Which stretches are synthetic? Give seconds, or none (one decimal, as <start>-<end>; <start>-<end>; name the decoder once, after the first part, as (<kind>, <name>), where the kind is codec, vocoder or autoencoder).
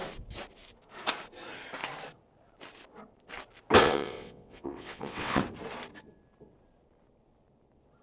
3.8-5.4 (vocoder, WaveNeXt)